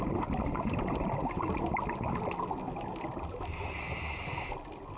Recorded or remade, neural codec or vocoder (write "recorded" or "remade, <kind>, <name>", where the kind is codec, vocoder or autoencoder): recorded